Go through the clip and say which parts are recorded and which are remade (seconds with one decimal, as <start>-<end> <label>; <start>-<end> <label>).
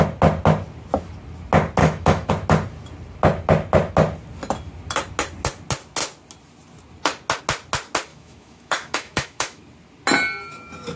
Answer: 0.0-1.8 recorded; 1.8-2.3 remade; 2.3-8.1 recorded; 8.1-9.6 remade; 9.6-11.0 recorded